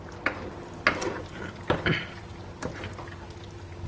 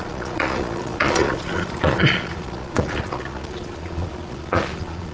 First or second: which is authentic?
first